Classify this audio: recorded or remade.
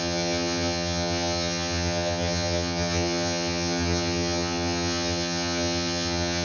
remade